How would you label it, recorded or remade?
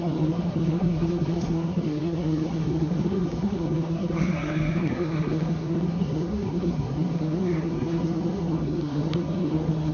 remade